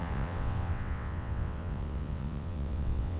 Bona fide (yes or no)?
no